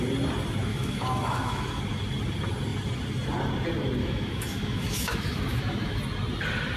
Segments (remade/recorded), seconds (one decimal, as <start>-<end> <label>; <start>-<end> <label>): 0.0-0.7 recorded; 0.7-1.8 remade; 1.8-4.0 recorded; 4.0-6.0 remade; 6.0-6.8 recorded